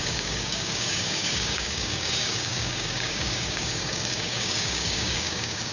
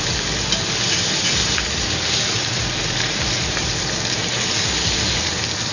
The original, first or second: second